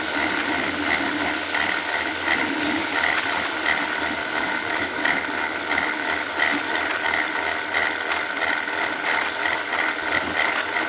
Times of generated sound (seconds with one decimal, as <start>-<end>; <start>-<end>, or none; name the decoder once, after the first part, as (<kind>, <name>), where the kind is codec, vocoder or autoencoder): 4.2-5.2 (autoencoder, DAC-VAE)